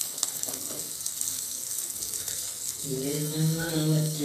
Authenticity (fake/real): fake